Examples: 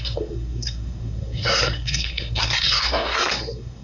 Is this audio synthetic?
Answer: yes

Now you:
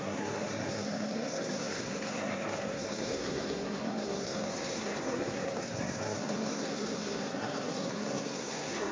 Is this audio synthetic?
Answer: yes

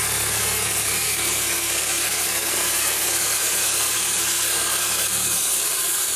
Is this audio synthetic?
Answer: yes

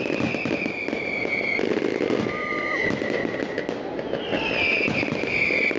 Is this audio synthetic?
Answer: no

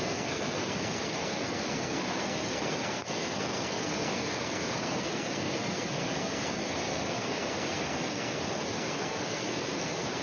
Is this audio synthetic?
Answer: yes